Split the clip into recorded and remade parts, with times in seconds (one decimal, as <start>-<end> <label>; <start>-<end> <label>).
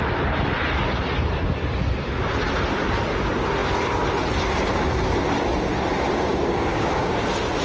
0.0-6.3 recorded; 6.3-7.1 remade; 7.1-7.6 recorded